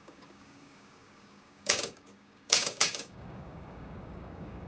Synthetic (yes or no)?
yes